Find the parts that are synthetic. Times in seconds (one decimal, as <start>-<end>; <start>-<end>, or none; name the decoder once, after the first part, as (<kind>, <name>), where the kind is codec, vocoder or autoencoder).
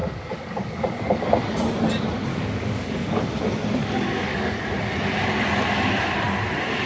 0.0-1.2 (codec, DAC); 2.3-3.2; 3.8-4.6